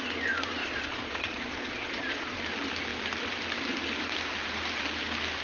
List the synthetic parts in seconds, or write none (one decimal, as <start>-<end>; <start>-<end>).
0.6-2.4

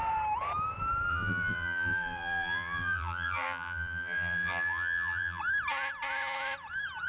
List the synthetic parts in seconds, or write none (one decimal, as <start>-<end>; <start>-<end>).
1.1-5.4

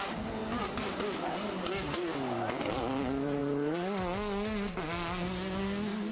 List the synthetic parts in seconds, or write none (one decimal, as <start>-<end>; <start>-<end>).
none

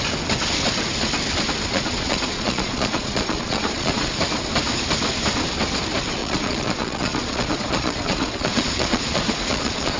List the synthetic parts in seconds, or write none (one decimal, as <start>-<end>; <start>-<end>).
1.7-4.2; 6.2-10.0